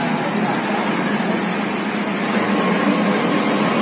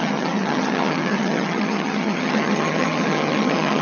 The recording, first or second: first